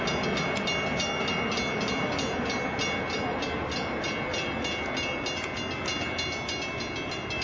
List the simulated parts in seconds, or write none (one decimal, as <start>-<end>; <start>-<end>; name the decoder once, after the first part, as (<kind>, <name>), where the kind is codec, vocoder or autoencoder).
none